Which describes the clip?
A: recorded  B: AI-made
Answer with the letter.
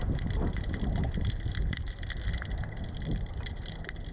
A